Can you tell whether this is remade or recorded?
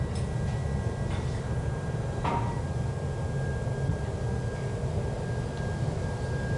recorded